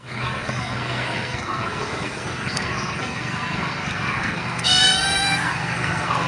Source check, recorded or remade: remade